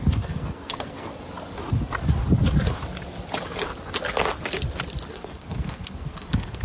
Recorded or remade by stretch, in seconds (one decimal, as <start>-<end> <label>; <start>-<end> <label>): 0.0-1.1 remade; 1.1-5.1 recorded; 5.1-6.6 remade